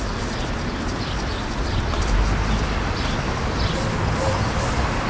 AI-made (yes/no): yes